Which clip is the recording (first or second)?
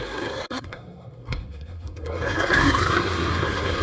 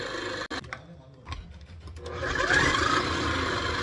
second